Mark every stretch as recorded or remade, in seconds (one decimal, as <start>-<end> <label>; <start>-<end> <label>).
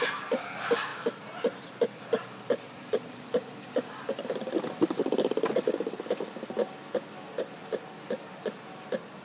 0.0-0.9 remade; 0.9-2.2 recorded; 2.2-6.6 remade; 6.6-9.2 recorded